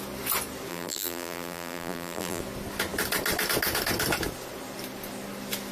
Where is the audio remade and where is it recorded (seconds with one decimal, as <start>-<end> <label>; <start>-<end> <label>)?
0.0-0.7 recorded; 0.7-2.4 remade; 2.4-5.7 recorded

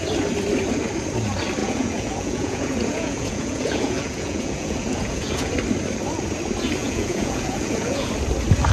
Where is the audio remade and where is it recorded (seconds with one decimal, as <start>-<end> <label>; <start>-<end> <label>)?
0.0-1.6 recorded; 1.6-5.5 remade; 5.5-6.8 recorded; 6.8-8.1 remade; 8.1-8.7 recorded

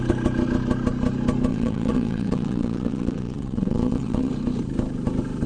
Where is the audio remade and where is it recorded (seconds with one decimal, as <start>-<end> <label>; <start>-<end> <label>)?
0.0-1.5 recorded; 1.5-4.3 remade; 4.3-5.5 recorded

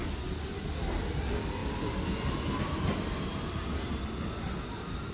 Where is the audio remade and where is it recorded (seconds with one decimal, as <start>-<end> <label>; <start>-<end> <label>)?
0.0-5.1 recorded

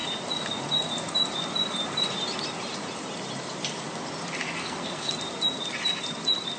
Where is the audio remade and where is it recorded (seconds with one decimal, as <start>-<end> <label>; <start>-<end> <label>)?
0.0-4.6 recorded; 4.6-5.1 remade; 5.1-6.6 recorded